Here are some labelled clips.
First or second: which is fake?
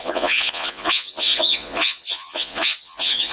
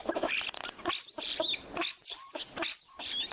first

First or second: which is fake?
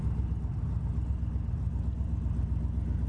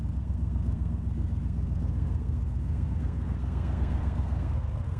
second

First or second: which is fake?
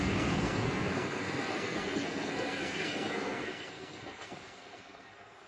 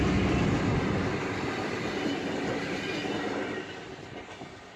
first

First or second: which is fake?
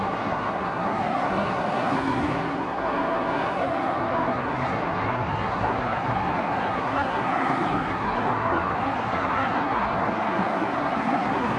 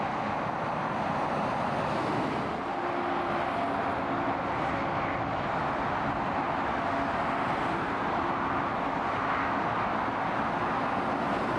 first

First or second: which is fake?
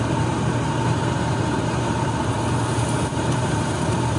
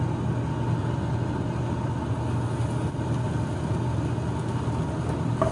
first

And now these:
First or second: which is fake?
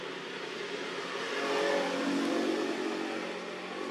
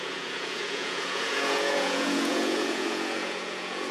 second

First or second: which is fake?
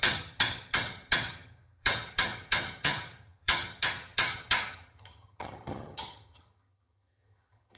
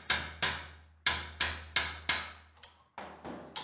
first